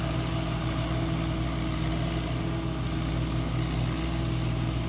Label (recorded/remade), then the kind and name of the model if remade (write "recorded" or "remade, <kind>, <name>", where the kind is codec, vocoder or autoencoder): recorded